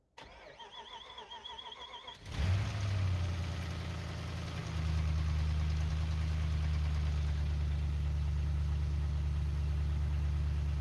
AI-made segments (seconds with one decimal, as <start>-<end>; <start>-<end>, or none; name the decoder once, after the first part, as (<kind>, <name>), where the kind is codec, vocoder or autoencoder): none